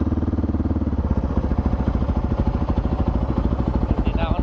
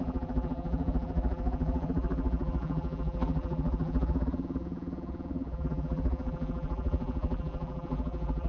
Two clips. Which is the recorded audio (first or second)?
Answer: first